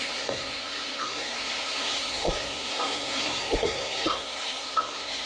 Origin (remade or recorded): remade